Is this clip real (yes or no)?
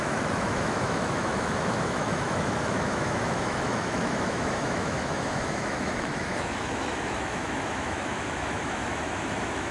no